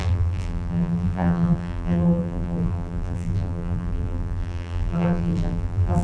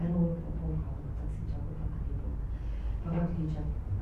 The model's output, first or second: first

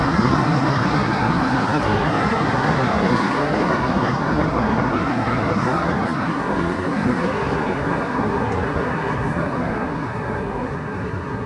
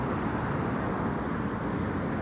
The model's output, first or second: first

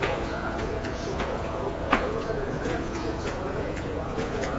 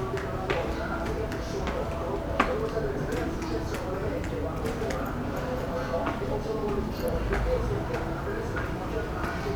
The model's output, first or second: first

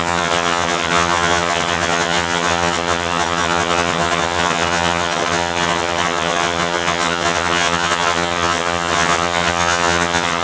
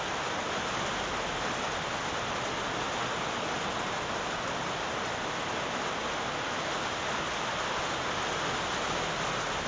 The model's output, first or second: first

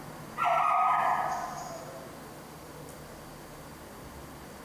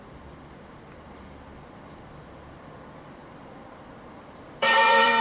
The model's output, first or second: second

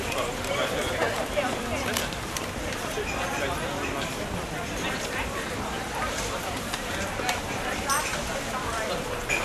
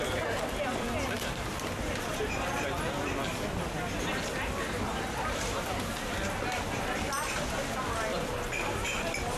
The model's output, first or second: first